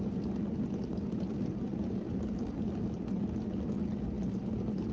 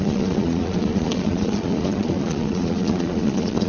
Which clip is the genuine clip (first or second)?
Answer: first